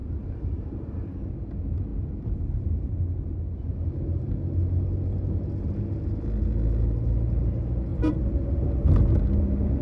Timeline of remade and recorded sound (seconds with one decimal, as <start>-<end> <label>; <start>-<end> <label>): 0.0-1.2 remade; 1.2-9.8 recorded